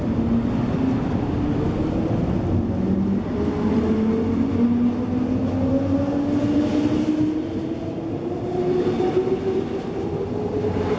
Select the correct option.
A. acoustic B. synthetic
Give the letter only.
A